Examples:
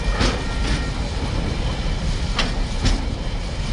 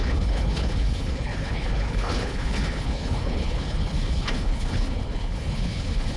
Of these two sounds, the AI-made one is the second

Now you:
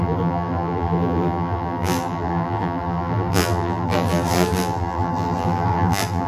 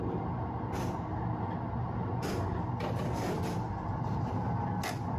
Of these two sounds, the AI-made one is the first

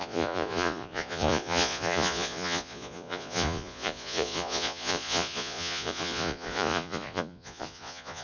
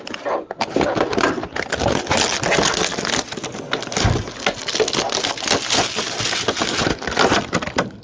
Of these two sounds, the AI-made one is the first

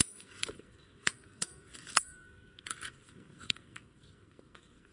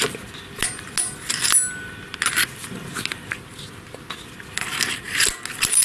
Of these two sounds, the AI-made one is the first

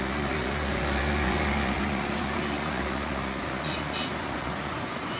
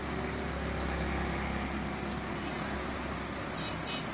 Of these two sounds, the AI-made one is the first